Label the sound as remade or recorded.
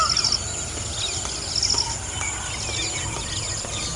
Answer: recorded